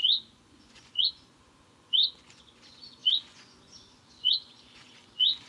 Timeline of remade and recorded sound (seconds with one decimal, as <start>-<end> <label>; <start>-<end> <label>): 0.0-5.5 remade